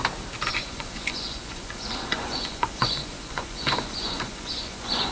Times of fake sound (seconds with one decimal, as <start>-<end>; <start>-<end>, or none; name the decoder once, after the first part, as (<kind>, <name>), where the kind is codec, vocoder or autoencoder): 0.5-5.1 (vocoder, Vocos)